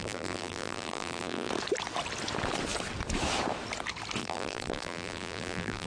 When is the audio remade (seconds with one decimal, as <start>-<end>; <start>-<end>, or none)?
0.0-1.5; 4.2-5.9